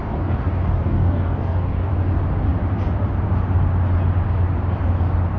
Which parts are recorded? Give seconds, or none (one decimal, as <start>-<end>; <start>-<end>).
1.9-5.4